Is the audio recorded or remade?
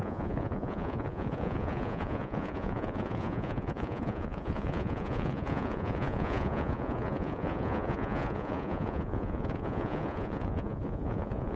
remade